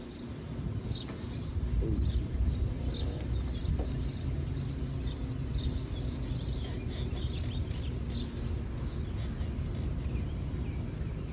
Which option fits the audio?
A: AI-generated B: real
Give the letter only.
B